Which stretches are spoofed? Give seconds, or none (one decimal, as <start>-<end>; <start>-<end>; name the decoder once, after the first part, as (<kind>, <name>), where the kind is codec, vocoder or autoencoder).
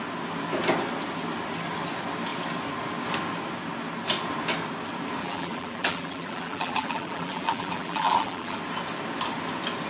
5.2-8.6 (vocoder, BigVGAN v2)